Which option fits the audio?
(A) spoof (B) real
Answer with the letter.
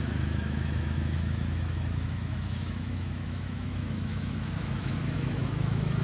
A